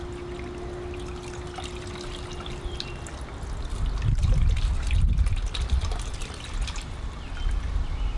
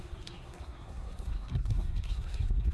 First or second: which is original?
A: first